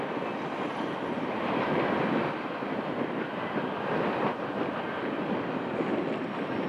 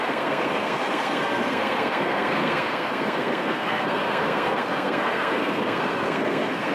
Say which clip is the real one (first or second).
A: first